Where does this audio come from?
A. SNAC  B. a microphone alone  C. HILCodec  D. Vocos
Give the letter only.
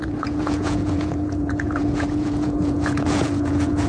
D